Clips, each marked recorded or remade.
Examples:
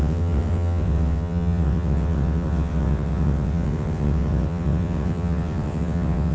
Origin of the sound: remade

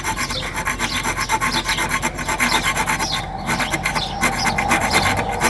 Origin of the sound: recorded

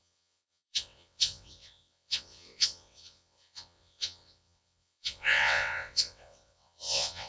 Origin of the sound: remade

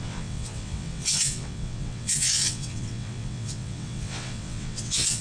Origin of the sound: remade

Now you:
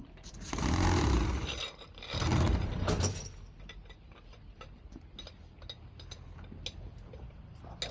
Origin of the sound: recorded